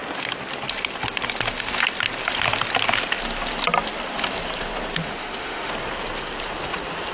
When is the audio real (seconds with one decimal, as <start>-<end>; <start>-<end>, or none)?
0.0-5.0; 5.7-7.1